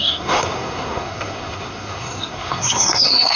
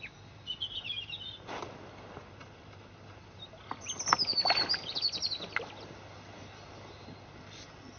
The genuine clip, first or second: second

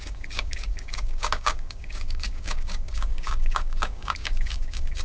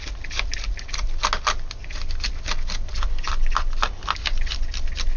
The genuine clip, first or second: second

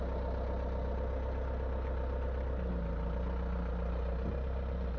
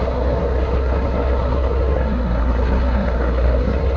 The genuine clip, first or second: first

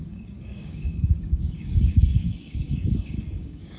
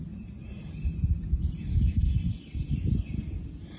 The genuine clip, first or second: second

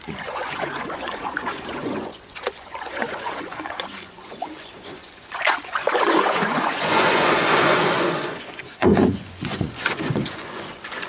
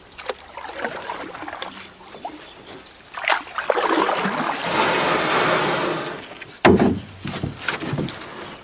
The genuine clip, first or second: second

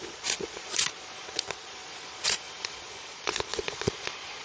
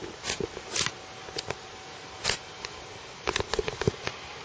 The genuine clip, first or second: second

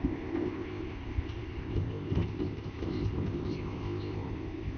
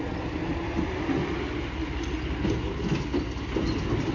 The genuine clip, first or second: second